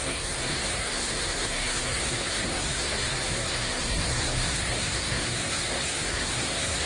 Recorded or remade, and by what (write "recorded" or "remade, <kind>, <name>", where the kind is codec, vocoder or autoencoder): remade, codec, SNAC